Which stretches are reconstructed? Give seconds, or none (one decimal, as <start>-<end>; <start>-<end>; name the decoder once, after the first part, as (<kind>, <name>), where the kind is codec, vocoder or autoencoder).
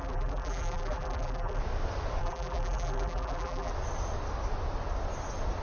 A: 0.0-1.6 (vocoder, BigVGAN v2); 2.2-3.7